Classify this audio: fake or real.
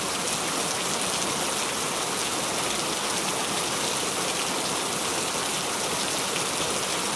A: real